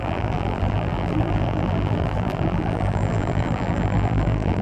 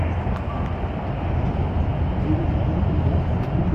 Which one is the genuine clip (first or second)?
second